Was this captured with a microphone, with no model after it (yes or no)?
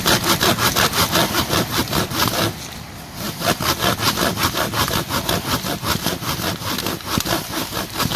yes